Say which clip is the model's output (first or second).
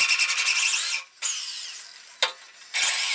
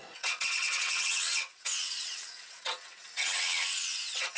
second